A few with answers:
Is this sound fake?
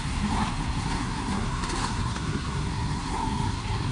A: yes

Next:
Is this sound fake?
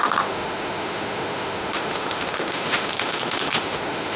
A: yes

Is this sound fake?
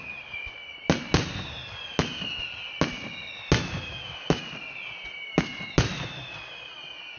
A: no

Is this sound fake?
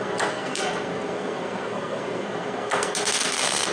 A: yes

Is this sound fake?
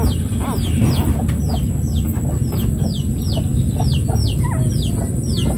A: no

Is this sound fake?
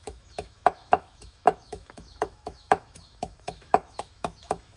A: yes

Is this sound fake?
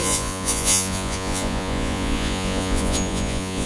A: yes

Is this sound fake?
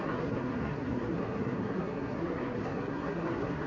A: yes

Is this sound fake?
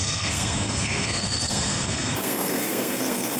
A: yes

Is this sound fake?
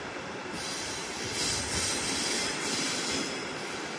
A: no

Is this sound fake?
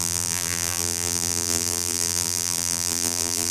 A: yes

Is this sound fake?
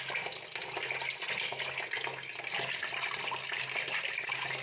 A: no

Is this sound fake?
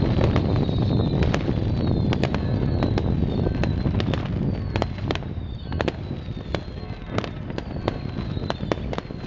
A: no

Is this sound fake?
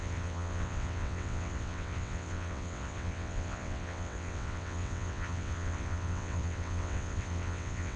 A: yes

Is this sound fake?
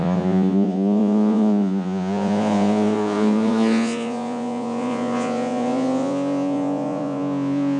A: yes